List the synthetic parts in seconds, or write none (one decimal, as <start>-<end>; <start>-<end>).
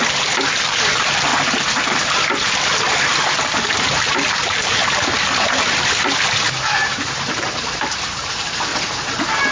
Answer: 0.0-1.3; 4.1-4.8; 6.9-9.5